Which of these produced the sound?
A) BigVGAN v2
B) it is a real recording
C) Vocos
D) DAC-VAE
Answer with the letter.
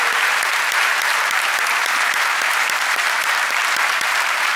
A